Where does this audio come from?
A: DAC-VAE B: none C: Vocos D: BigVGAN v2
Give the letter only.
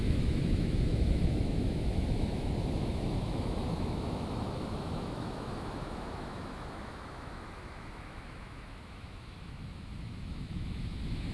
A